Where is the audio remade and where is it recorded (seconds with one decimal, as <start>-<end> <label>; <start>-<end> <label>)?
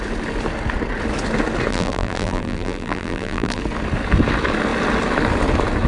0.0-1.7 recorded; 1.7-3.6 remade; 3.6-5.9 recorded